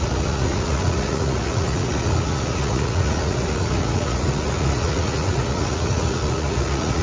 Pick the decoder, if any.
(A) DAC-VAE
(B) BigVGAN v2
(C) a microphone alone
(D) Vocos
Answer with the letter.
D